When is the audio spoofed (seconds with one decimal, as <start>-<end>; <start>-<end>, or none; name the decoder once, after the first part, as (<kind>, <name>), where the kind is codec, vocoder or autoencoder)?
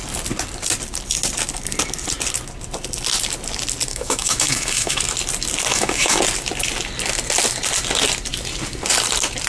3.9-5.0 (autoencoder, DAC-VAE); 5.7-6.2